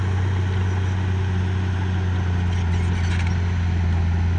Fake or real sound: real